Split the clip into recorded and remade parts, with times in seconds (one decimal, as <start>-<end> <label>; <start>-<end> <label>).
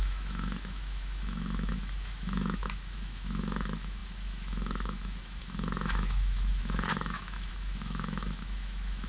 0.0-9.1 remade